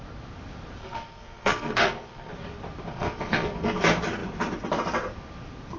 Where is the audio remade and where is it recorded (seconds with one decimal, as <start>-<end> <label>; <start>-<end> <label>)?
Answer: 0.0-0.8 recorded; 0.8-2.3 remade; 2.3-2.9 recorded; 2.9-3.8 remade; 3.8-5.8 recorded